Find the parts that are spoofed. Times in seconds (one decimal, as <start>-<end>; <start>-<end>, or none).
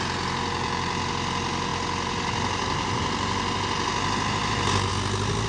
none